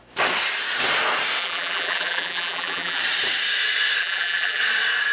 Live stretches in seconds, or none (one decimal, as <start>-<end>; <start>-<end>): 0.0-1.4; 3.0-4.0; 4.6-5.1